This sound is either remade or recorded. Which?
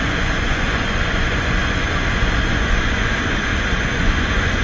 remade